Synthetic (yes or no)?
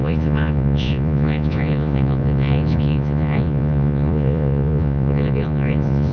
yes